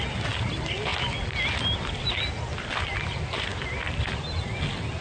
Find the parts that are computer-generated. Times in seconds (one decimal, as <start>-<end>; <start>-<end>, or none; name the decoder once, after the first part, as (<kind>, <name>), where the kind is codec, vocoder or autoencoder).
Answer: none